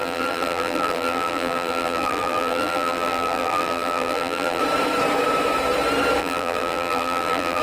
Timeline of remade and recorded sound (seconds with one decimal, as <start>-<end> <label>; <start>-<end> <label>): 0.0-4.6 remade; 4.6-6.2 recorded; 6.2-7.6 remade

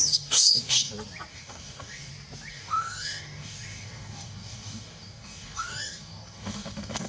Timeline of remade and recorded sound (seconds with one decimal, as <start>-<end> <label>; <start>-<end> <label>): 0.0-0.9 remade; 0.9-1.3 recorded; 1.3-2.1 remade; 2.1-2.5 recorded; 2.5-7.1 remade

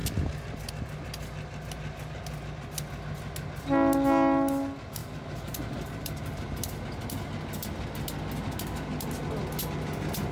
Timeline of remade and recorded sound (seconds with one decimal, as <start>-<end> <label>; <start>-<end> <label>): 0.0-5.0 recorded; 5.0-6.8 remade; 6.8-10.3 recorded

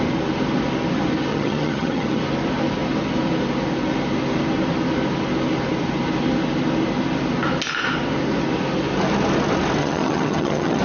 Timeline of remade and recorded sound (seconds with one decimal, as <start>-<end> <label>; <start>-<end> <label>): 0.0-1.3 recorded; 1.3-2.2 remade; 2.2-9.8 recorded; 9.8-10.8 remade

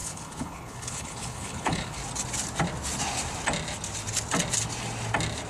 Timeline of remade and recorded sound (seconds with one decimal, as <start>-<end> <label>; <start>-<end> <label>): 0.0-2.0 remade; 2.0-5.5 recorded

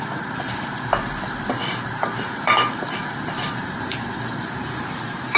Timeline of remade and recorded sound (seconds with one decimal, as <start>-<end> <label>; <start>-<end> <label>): 0.0-0.9 remade; 0.9-1.6 recorded; 1.6-5.4 remade

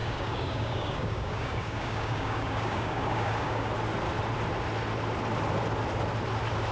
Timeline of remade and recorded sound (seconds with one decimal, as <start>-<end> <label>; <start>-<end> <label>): 0.0-3.7 remade; 3.7-6.7 recorded